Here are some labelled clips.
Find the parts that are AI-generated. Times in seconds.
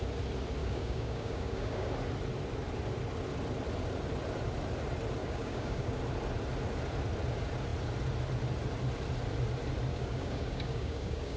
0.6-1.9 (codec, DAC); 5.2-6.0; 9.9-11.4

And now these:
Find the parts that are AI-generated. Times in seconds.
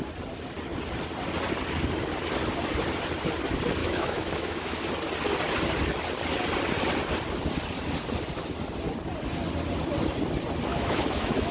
3.8-4.8 (autoencoder, DAC-VAE); 10.7-11.5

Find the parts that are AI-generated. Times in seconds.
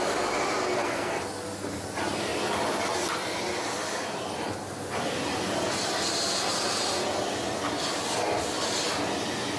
0.6-1.2 (codec, SNAC)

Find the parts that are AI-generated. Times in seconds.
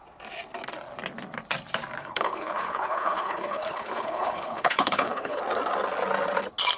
2.0-5.4 (codec, HILCodec)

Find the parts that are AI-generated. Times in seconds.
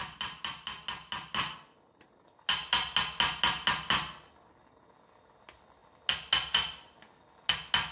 none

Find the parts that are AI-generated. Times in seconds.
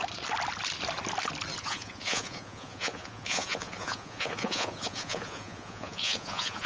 1.6-6.7 (vocoder, Vocos)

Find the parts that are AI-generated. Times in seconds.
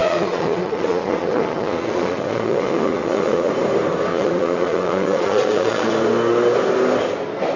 0.0-3.5 (vocoder, Vocos); 4.1-5.9